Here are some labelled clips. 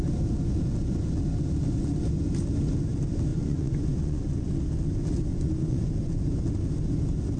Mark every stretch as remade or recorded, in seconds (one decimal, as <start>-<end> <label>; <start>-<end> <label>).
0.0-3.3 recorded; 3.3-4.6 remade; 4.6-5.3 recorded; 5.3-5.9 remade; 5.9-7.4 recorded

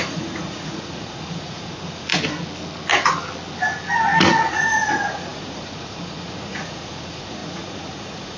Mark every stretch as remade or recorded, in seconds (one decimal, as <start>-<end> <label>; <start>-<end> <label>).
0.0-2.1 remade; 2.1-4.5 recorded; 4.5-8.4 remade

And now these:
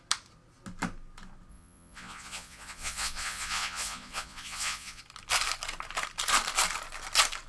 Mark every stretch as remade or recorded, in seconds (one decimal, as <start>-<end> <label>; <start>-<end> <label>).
0.0-1.5 recorded; 1.5-5.0 remade; 5.0-7.5 recorded

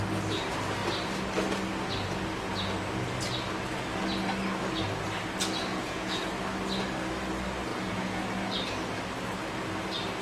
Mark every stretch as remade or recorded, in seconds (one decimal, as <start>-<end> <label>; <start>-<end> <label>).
0.0-5.7 recorded; 5.7-6.3 remade; 6.3-7.7 recorded; 7.7-8.2 remade; 8.2-10.2 recorded

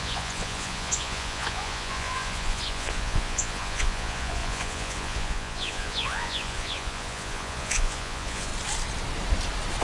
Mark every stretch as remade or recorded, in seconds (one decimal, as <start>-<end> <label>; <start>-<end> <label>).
0.0-8.5 remade; 8.5-9.8 recorded

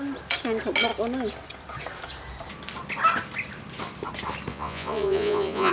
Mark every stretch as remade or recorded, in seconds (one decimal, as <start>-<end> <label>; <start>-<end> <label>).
0.0-4.5 recorded; 4.5-5.7 remade